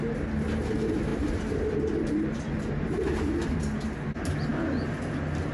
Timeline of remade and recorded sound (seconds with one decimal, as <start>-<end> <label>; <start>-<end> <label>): 0.0-1.1 recorded; 1.1-2.7 remade; 2.7-5.5 recorded